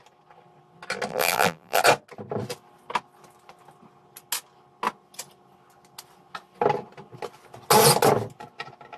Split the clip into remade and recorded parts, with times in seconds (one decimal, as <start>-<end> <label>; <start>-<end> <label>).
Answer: 0.0-1.1 recorded; 1.1-1.8 remade; 1.8-9.0 recorded